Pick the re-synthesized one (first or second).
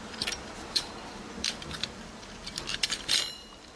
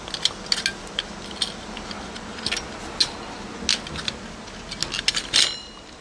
first